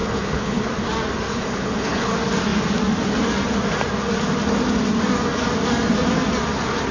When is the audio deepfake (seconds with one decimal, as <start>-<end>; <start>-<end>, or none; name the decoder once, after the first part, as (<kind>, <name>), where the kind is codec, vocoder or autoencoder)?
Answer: 0.0-0.7 (codec, HILCodec); 1.3-2.1